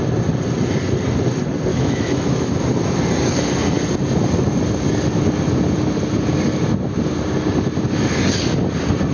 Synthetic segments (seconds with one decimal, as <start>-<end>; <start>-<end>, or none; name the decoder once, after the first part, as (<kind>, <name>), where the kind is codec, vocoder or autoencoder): 1.7-2.5 (autoencoder, DAC-VAE)